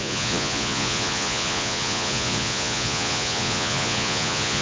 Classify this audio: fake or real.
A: fake